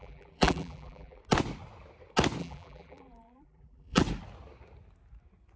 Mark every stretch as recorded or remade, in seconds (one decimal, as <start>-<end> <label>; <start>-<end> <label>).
0.0-1.2 remade; 1.2-2.4 recorded; 2.4-4.0 remade; 4.0-5.6 recorded